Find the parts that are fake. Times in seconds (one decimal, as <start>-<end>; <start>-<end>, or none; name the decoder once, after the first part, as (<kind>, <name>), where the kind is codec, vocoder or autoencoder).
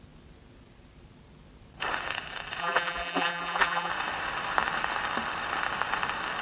2.6-3.9 (vocoder, BigVGAN v2)